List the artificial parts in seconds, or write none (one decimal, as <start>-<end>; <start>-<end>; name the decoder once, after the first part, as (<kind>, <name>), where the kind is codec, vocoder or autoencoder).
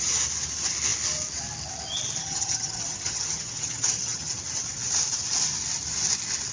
2.2-4.3 (vocoder, HiFi-GAN)